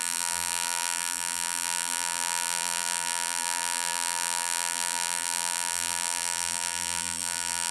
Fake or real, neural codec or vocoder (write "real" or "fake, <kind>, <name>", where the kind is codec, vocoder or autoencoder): fake, vocoder, BigVGAN v2